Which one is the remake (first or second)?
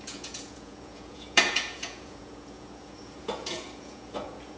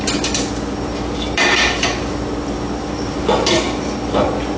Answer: first